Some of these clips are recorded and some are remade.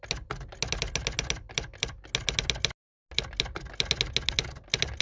recorded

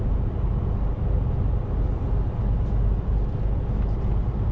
recorded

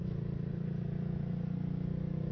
recorded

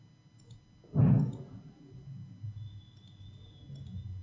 recorded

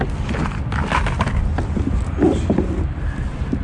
recorded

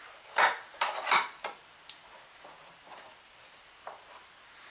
recorded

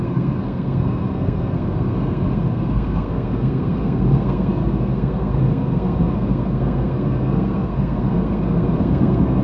remade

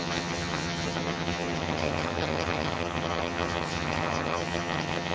remade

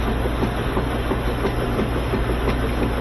recorded